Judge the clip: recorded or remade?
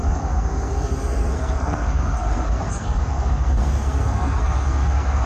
remade